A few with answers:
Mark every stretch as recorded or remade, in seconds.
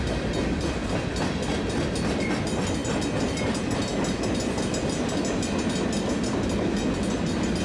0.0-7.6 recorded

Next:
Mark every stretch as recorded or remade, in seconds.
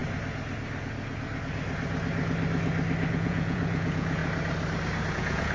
0.0-3.1 recorded; 3.1-4.2 remade; 4.2-5.1 recorded; 5.1-5.5 remade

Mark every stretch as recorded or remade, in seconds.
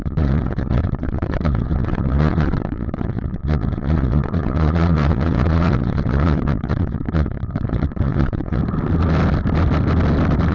0.0-8.6 remade; 8.6-10.5 recorded